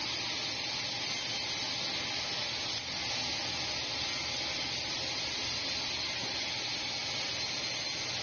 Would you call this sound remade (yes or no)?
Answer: no